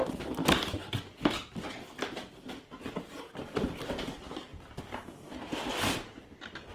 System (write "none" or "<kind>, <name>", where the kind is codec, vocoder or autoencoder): none